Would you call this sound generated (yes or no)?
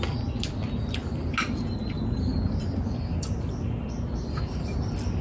no